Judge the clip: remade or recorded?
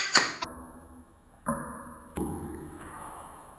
remade